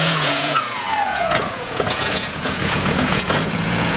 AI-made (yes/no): yes